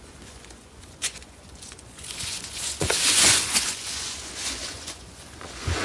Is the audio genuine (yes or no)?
no